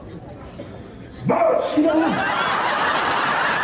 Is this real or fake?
real